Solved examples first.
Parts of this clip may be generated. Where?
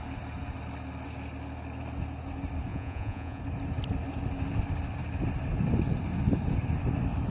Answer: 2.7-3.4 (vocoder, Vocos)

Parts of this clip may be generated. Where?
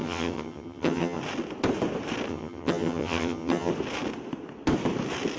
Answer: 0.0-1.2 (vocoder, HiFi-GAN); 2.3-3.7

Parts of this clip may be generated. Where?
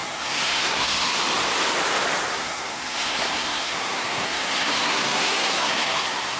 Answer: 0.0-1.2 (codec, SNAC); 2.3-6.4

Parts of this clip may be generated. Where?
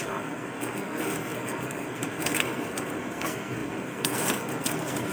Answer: 0.0-5.1 (codec, SNAC)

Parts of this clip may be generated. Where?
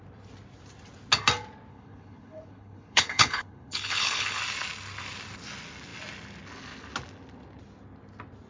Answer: 1.7-4.4 (codec, HILCodec)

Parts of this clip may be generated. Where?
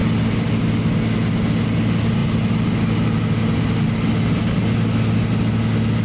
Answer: none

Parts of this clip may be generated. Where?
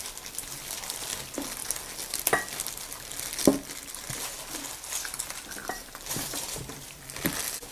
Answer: 5.6-7.0 (vocoder, BigVGAN v2)